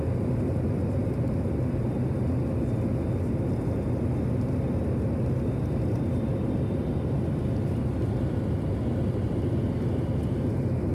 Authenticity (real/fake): real